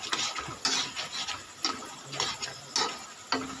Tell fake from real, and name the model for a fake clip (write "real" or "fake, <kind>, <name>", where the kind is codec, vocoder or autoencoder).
real